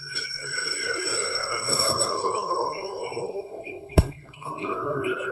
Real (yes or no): no